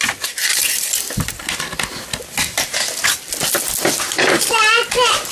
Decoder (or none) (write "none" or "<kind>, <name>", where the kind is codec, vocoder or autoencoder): none